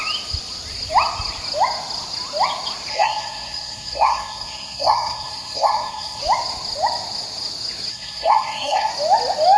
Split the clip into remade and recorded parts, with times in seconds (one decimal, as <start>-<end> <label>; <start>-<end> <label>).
0.0-2.9 recorded; 2.9-6.2 remade; 6.2-7.9 recorded; 7.9-8.9 remade; 8.9-9.6 recorded